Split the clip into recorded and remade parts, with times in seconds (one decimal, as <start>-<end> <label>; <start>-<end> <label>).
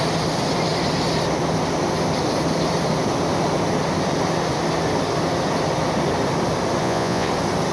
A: 0.0-6.8 recorded; 6.8-7.3 remade; 7.3-7.7 recorded